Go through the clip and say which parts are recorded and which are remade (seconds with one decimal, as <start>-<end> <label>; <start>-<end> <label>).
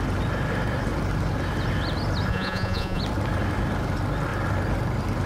0.0-2.3 recorded; 2.3-3.0 remade; 3.0-5.3 recorded